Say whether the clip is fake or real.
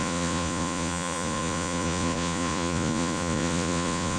fake